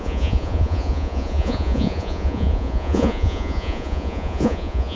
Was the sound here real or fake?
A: fake